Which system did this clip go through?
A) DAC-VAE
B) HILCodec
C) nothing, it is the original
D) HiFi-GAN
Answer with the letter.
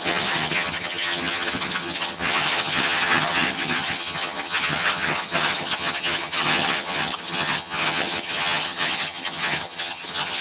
D